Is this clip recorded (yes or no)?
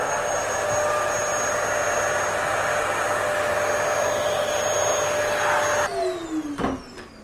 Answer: yes